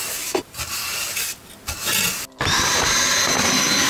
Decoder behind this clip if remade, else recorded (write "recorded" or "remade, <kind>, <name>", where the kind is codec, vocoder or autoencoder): recorded